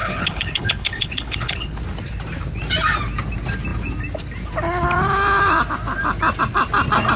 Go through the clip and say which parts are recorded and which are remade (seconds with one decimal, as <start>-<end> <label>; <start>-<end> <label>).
0.0-1.8 remade; 1.8-7.2 recorded